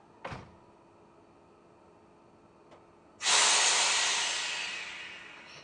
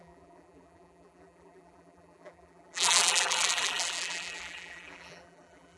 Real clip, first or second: first